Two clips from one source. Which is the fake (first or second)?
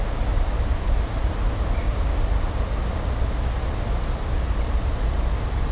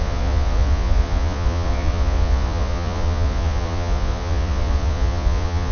second